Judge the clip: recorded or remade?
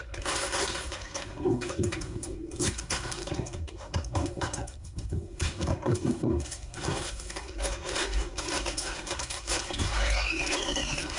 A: remade